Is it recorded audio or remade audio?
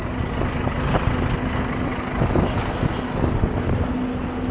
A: recorded